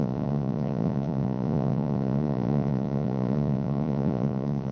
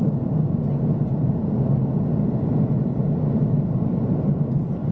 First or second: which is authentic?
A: second